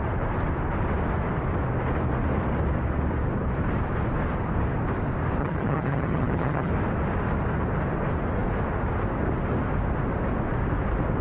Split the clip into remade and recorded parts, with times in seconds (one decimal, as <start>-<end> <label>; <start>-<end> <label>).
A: 0.0-5.4 recorded; 5.4-6.7 remade; 6.7-11.2 recorded